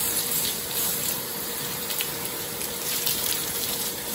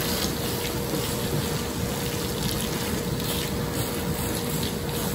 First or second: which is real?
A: second